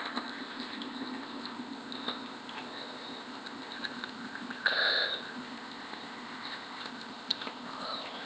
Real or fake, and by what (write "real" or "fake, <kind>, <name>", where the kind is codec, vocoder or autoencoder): fake, codec, ZipCodec